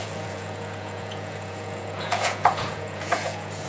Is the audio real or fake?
fake